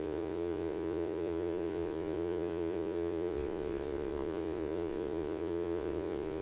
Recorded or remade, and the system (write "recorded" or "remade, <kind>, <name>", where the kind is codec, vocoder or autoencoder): remade, vocoder, Vocos